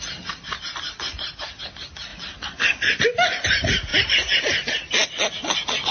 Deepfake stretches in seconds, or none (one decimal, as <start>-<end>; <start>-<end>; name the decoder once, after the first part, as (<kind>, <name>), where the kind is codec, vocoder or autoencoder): none